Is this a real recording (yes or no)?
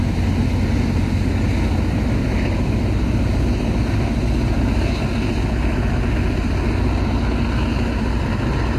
yes